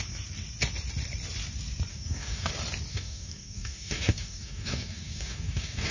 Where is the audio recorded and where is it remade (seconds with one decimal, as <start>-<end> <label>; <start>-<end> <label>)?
0.0-1.9 recorded; 1.9-2.5 remade; 2.5-2.9 recorded; 2.9-5.9 remade